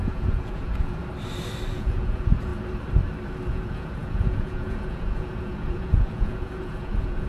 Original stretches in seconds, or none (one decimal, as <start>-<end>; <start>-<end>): 1.0-1.7; 2.5-3.5